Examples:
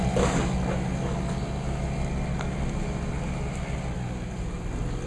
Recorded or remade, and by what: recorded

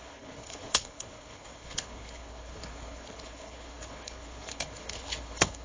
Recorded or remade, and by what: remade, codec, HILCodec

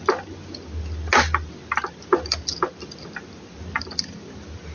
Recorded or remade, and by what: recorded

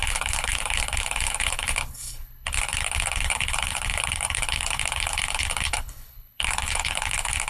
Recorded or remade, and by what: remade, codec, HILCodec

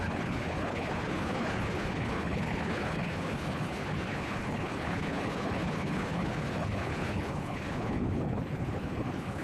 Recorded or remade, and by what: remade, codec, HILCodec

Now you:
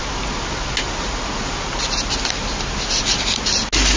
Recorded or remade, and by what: recorded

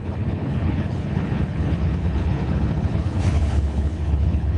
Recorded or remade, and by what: remade, codec, HILCodec